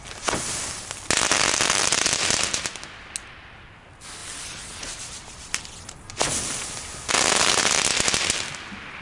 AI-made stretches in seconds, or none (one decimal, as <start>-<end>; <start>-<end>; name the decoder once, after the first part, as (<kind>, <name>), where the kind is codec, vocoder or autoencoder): none